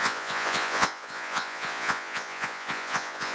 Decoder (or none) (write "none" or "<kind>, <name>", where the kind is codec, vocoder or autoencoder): vocoder, Vocos